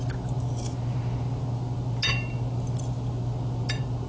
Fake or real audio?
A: real